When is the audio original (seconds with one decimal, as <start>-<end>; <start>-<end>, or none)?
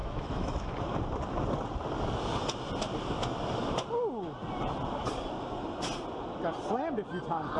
0.7-7.6